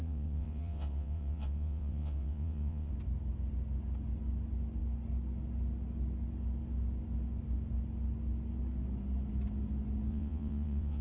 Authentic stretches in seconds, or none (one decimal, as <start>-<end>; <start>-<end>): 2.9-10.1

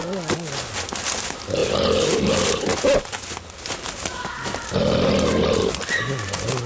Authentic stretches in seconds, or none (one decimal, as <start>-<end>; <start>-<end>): 0.0-6.7

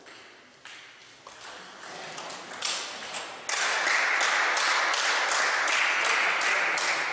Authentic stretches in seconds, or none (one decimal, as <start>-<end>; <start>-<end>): 0.0-7.1